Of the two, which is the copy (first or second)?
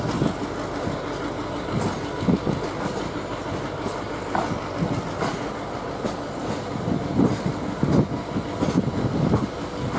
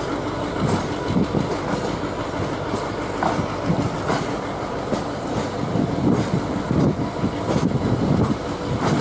second